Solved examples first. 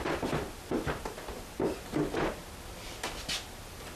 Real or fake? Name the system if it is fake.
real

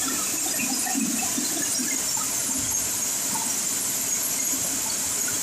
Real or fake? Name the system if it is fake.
real